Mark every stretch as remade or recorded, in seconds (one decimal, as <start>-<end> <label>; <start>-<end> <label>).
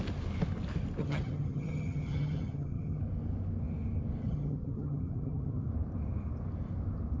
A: 0.0-1.0 recorded; 1.0-3.0 remade; 3.0-4.2 recorded; 4.2-5.7 remade; 5.7-7.2 recorded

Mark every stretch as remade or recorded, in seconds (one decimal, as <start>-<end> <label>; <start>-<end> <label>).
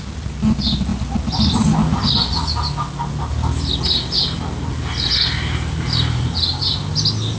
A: 0.0-7.4 recorded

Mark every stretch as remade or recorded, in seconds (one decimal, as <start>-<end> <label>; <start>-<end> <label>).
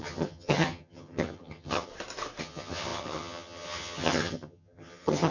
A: 0.0-1.9 remade; 1.9-2.4 recorded; 2.4-5.3 remade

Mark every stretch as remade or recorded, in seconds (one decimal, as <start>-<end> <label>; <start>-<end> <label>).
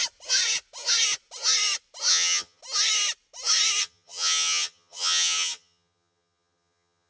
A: 0.0-2.1 recorded; 2.1-2.6 remade; 2.6-3.8 recorded; 3.8-7.1 remade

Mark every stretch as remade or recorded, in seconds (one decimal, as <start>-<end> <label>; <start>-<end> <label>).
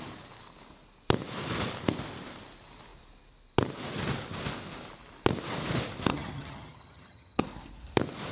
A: 0.0-6.1 recorded; 6.1-7.4 remade; 7.4-8.3 recorded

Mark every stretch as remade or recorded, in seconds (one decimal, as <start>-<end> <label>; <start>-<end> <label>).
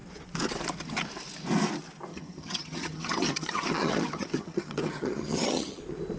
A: 0.0-2.1 recorded; 2.1-5.8 remade; 5.8-6.2 recorded